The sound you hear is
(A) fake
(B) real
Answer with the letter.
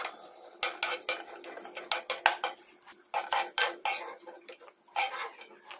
B